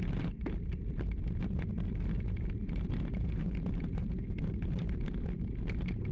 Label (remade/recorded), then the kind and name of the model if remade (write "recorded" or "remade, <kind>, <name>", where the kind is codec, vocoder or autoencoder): remade, vocoder, BigVGAN v2